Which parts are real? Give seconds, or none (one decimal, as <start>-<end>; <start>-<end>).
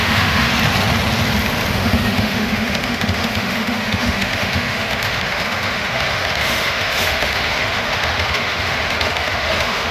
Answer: 0.5-1.7